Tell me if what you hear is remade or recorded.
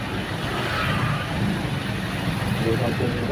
recorded